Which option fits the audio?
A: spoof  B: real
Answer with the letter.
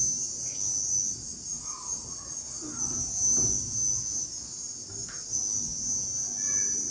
B